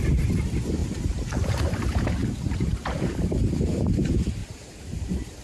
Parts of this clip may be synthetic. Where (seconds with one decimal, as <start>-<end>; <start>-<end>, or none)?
0.0-5.4